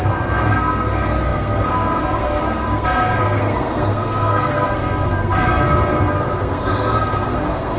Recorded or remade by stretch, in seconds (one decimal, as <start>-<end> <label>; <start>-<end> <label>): 0.0-5.5 remade; 5.5-6.4 recorded; 6.4-7.8 remade